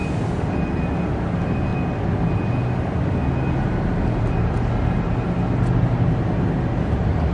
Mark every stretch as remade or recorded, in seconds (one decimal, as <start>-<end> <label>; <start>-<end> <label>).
0.0-7.3 recorded